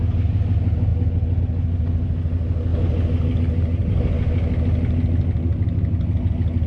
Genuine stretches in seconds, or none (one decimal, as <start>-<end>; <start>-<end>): 0.0-6.7